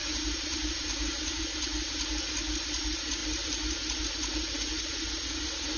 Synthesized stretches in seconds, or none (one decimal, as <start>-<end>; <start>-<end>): 0.0-1.4; 3.2-4.0